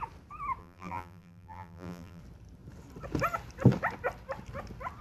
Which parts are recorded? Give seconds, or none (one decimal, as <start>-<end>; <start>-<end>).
0.0-0.6; 2.2-5.0